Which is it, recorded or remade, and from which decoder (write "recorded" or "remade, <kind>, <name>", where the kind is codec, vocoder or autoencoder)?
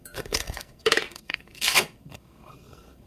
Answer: remade, codec, SNAC